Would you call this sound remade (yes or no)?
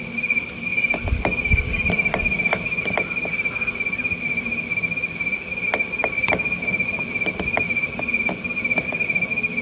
no